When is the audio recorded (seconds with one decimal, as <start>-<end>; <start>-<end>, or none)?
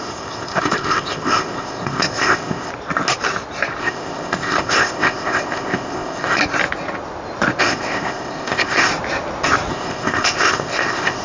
2.7-3.8; 6.4-7.6; 8.9-9.7